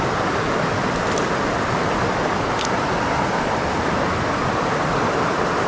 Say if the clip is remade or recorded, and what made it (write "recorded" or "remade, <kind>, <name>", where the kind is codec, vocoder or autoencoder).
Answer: recorded